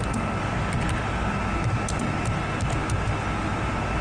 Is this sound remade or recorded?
recorded